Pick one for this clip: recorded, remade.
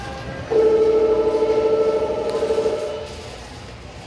recorded